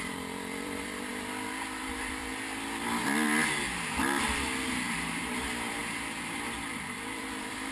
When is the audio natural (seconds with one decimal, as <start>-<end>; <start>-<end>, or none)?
1.1-1.8; 2.3-5.3